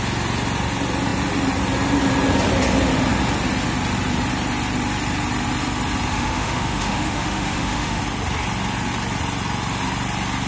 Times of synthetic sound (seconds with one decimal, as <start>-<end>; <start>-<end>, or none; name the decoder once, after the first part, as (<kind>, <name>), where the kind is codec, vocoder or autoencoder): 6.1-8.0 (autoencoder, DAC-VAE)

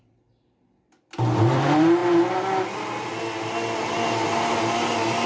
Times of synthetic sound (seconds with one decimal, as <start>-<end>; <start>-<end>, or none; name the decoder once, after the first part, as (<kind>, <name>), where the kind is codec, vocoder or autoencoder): none

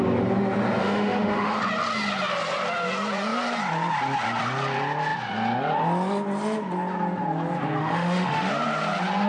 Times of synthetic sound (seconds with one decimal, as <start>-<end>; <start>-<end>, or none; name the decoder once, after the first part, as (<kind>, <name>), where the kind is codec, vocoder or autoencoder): 0.8-1.6 (autoencoder, DAC-VAE); 7.8-8.5